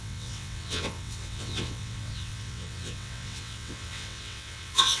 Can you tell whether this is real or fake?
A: fake